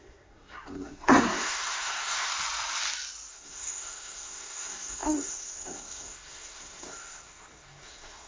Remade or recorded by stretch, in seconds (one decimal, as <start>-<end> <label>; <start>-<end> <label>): 0.0-2.3 remade; 2.3-3.3 recorded; 3.3-8.3 remade